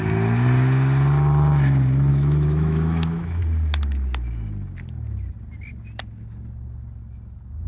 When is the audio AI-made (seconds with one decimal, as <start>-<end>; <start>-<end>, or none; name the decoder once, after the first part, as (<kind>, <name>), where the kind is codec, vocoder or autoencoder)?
2.1-3.4 (autoencoder, DAC-VAE)